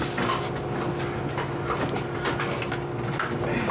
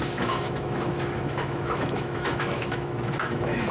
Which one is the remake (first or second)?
second